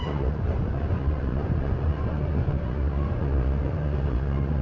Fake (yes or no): yes